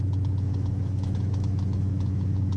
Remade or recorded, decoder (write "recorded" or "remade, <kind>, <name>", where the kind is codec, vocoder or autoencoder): remade, autoencoder, DAC-VAE